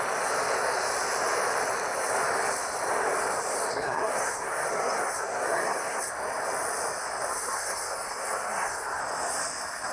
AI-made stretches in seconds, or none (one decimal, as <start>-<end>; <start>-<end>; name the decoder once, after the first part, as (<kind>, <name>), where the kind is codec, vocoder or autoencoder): 3.7-6.1 (codec, SNAC); 7.3-9.0